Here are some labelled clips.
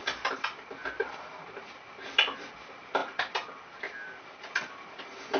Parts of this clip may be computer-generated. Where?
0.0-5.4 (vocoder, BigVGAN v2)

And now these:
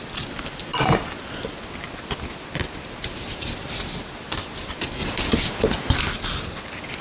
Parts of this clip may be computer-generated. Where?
none